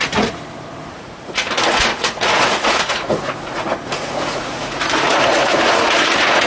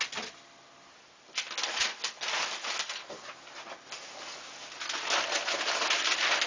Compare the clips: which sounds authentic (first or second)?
second